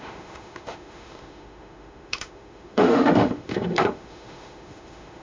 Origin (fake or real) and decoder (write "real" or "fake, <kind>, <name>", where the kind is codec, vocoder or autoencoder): fake, autoencoder, DAC-VAE